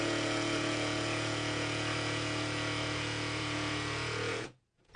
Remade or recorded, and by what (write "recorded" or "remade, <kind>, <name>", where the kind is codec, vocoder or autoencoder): remade, vocoder, Vocos